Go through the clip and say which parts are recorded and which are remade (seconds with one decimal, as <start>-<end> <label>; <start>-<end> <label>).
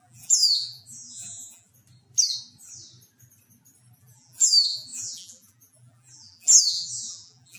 0.0-1.7 remade; 1.7-4.0 recorded; 4.0-7.6 remade